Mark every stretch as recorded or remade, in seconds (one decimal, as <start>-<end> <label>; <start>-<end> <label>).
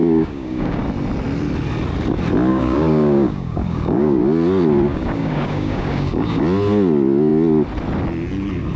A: 0.0-0.8 remade; 0.8-2.5 recorded; 2.5-4.2 remade; 4.2-4.9 recorded; 4.9-6.4 remade; 6.4-8.8 recorded